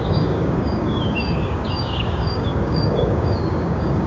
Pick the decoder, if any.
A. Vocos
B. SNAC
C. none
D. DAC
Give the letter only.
D